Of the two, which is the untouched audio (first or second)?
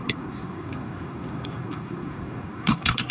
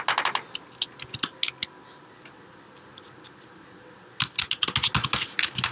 second